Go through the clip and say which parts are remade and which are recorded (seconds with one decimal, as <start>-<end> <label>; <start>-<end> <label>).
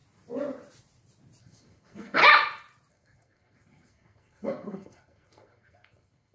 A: 0.0-1.4 recorded; 1.4-2.2 remade; 2.2-2.9 recorded; 2.9-6.3 remade